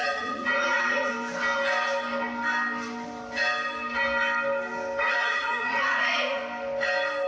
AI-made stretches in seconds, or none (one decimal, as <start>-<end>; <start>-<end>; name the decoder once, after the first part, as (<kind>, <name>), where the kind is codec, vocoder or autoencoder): 0.0-1.1 (vocoder, Vocos); 5.0-6.4